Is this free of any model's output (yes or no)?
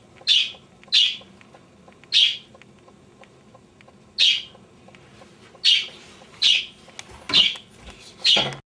yes